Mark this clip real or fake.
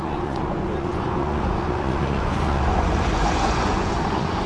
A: fake